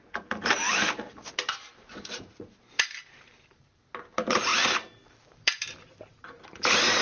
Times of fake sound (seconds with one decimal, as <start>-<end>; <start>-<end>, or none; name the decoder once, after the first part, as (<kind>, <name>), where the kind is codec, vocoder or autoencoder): 0.0-4.5 (vocoder, BigVGAN v2); 5.3-7.0